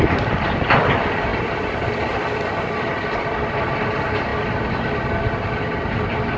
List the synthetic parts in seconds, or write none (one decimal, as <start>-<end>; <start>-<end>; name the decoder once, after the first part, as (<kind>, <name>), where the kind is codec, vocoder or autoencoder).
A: none